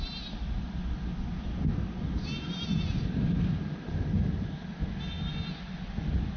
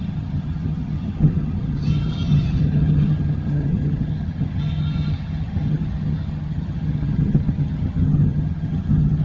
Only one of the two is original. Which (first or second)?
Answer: first